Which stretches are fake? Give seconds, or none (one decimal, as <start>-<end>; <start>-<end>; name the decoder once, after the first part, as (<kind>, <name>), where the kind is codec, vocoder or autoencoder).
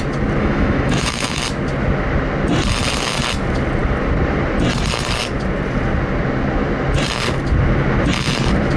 0.4-1.4 (autoencoder, DAC-VAE)